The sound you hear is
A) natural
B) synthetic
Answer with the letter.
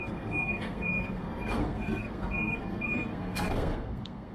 B